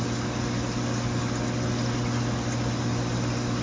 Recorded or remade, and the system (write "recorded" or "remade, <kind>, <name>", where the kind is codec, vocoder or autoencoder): recorded